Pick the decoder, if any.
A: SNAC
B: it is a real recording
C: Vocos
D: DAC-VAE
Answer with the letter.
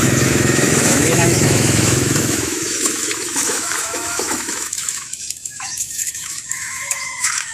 D